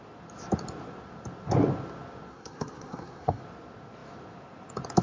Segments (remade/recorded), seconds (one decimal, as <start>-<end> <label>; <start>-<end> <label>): 0.0-2.3 recorded; 2.3-3.4 remade; 3.4-5.0 recorded